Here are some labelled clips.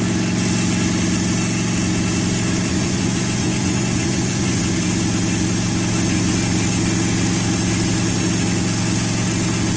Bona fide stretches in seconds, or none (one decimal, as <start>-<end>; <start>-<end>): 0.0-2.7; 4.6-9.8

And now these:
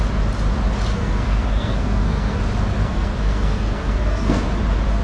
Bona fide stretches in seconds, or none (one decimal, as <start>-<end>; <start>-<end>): 0.0-0.9; 2.4-2.8; 4.4-5.0

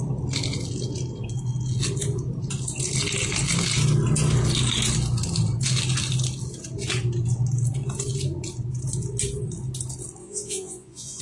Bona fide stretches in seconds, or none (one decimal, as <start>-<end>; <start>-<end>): 0.0-10.2

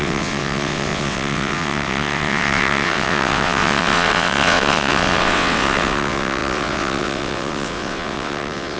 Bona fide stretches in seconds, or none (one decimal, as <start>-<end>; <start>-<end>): none

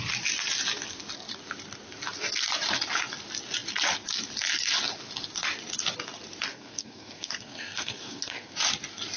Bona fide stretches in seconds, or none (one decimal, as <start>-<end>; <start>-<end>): 0.0-6.5; 8.6-9.2

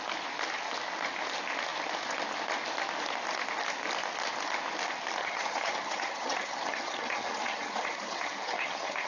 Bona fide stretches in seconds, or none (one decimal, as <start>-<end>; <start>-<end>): 0.0-5.2

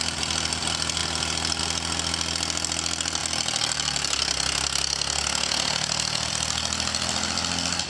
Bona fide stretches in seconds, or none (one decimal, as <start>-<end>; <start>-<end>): 0.0-7.9

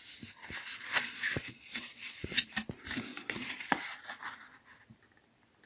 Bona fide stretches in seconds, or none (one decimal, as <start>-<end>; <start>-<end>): 0.0-0.7; 2.4-3.1; 4.2-5.7